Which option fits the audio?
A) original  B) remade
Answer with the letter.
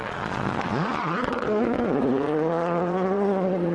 B